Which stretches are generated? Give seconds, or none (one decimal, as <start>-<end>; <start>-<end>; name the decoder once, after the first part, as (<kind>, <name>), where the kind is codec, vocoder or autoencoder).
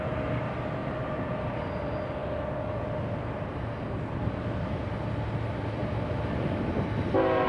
none